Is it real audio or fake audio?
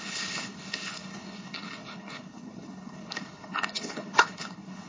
fake